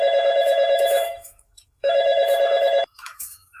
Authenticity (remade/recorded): remade